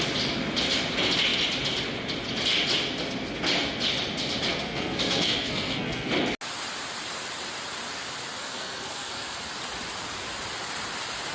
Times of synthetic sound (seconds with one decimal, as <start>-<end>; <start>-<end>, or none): 4.5-6.1; 8.4-9.4